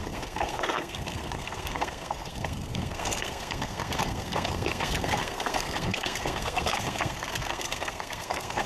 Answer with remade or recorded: remade